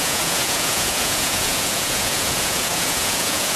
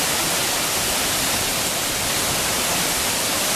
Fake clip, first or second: first